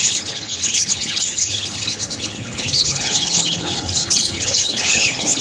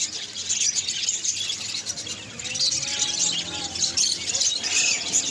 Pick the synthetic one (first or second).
first